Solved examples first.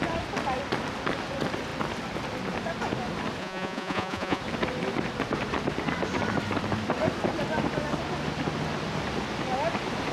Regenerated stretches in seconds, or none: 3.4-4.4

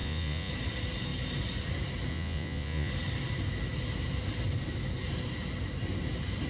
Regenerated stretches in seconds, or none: 0.0-0.5; 2.1-2.9

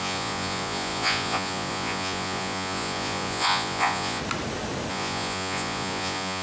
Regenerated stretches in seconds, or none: 0.0-4.2; 4.9-6.4

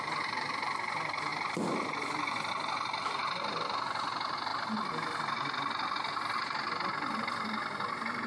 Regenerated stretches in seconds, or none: none

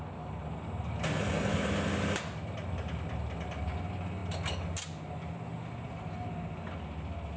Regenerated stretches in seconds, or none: none